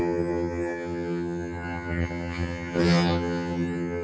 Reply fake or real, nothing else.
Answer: fake